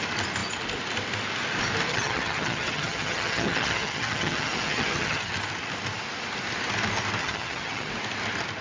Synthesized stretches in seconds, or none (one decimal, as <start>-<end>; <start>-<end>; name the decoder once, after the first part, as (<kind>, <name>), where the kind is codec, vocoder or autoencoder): 1.9-5.3 (vocoder, HiFi-GAN); 7.2-7.9